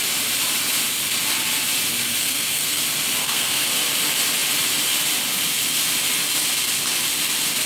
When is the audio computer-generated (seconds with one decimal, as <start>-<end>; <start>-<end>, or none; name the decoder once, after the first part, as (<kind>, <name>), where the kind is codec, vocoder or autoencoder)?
2.2-2.8 (codec, SNAC); 3.2-3.7